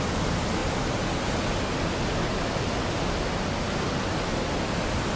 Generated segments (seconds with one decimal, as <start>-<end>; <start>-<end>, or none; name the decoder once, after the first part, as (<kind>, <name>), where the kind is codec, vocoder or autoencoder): none